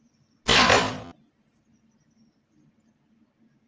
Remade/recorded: recorded